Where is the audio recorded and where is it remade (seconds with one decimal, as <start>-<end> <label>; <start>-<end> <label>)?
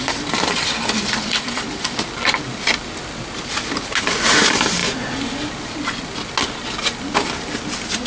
0.0-8.1 recorded